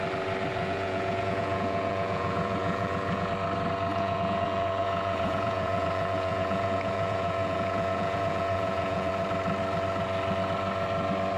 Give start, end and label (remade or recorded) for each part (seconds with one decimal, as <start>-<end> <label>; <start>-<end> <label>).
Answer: 0.0-0.5 recorded; 0.5-3.3 remade; 3.3-3.9 recorded; 3.9-9.1 remade; 9.1-11.4 recorded